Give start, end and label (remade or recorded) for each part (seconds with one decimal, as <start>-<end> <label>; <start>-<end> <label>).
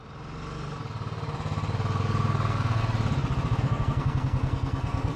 0.0-2.0 recorded; 2.0-2.8 remade; 2.8-3.6 recorded; 3.6-5.2 remade